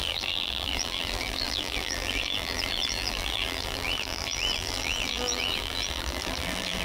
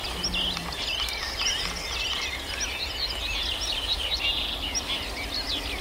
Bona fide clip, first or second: second